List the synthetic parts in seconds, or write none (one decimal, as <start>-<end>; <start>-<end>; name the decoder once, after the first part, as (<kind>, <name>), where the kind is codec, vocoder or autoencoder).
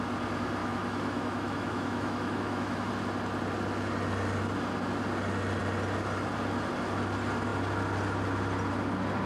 0.6-2.9 (autoencoder, DAC-VAE)